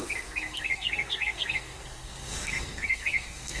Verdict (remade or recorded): remade